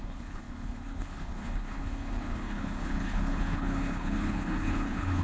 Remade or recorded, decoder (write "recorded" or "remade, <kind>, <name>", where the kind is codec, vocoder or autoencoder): remade, codec, HILCodec